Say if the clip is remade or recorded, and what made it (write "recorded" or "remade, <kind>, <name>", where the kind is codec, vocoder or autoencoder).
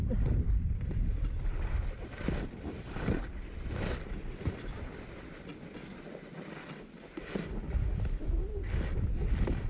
recorded